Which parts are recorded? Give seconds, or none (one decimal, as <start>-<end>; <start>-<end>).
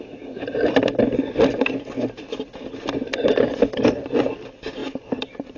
0.0-5.6